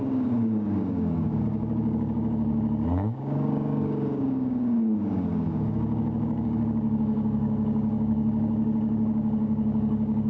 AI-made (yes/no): yes